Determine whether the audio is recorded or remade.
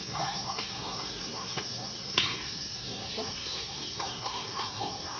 remade